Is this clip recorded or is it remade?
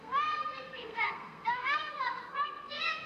remade